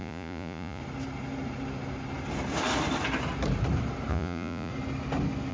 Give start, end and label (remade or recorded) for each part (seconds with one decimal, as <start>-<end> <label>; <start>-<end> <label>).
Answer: 0.0-0.8 remade; 0.8-4.1 recorded; 4.1-4.7 remade; 4.7-5.5 recorded